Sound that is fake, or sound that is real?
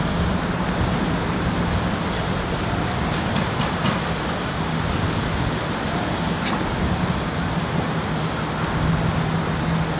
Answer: real